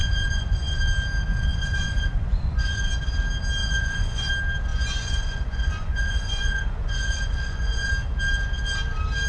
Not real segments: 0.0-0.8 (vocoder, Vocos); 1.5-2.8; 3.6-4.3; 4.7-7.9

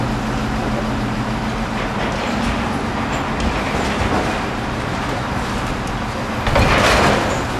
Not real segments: 0.6-2.8 (vocoder, BigVGAN v2)

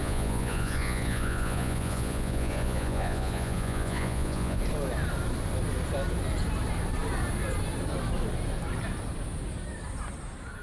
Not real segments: 0.0-4.6 (vocoder, Vocos)

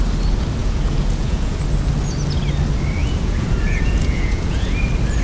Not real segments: 0.6-1.6 (vocoder, Vocos); 3.0-4.7

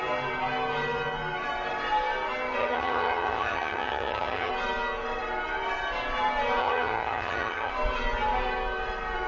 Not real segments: 2.6-4.5 (vocoder, HiFi-GAN); 6.6-7.7

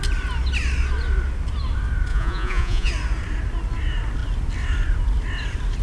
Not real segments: 2.1-2.9 (vocoder, Vocos)